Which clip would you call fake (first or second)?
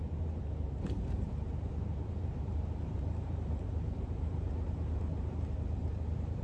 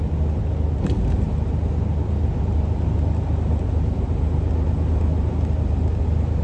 first